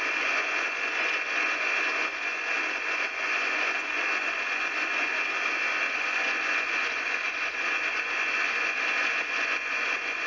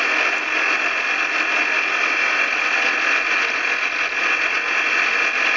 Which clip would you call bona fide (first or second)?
second